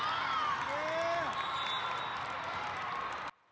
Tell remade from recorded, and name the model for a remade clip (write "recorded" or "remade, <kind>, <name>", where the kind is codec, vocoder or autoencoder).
recorded